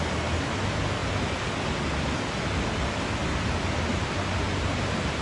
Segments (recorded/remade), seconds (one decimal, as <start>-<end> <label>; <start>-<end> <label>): 0.0-3.2 recorded; 3.2-5.2 remade